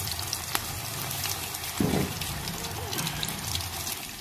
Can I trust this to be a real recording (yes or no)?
yes